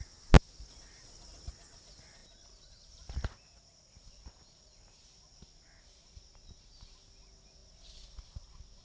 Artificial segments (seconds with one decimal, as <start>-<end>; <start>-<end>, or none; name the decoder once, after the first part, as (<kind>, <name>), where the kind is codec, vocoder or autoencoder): none